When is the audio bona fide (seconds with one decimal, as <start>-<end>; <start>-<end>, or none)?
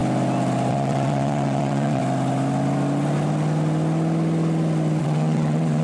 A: 0.0-0.7; 2.0-5.0